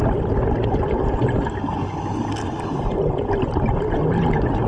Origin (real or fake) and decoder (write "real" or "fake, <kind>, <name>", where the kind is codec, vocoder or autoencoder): real